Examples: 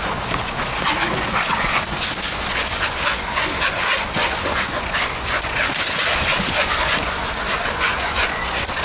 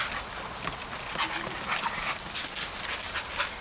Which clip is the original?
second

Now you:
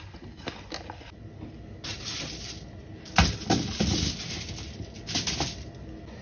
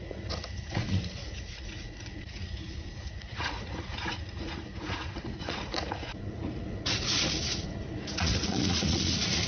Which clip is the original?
first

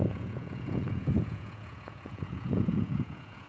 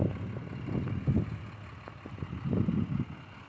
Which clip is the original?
second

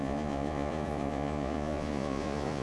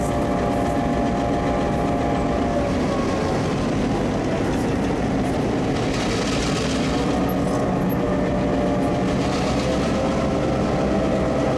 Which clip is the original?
second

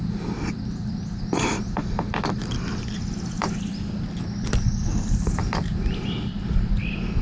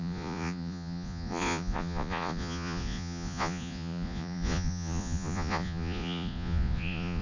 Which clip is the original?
first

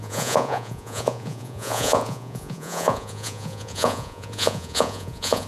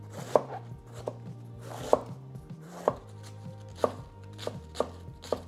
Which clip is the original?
second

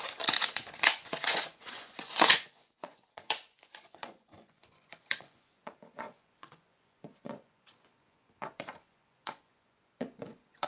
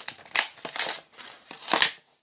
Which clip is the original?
second